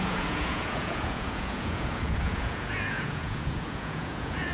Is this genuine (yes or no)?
no